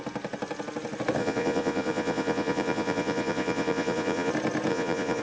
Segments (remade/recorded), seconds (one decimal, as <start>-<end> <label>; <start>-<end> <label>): 0.0-1.2 recorded; 1.2-4.3 remade; 4.3-4.7 recorded; 4.7-5.2 remade